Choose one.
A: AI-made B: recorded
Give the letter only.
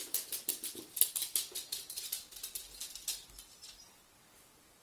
B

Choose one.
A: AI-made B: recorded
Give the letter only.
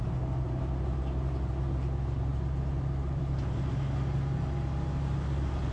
B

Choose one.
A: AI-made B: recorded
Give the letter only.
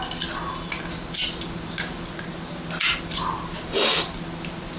B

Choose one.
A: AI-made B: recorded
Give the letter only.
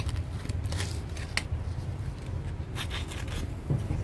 B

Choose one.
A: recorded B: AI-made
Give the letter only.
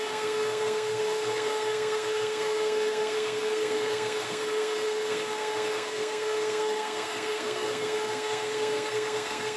B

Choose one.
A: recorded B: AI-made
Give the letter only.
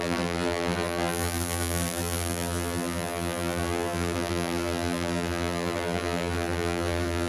B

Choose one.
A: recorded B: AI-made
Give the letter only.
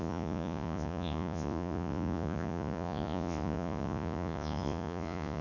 B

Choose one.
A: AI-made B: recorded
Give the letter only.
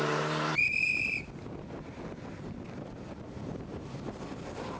B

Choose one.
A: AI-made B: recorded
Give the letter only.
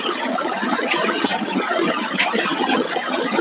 A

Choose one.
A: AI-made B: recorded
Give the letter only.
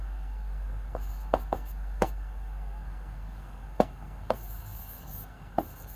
A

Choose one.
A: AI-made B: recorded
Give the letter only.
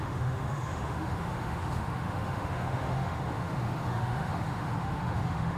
A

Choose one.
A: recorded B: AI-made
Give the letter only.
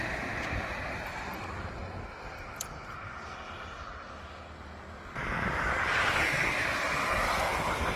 A